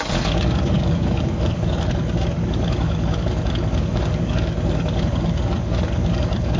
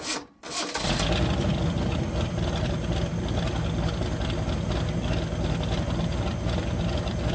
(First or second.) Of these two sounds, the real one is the second